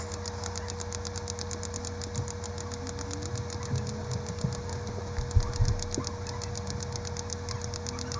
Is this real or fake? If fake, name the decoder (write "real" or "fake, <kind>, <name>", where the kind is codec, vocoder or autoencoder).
real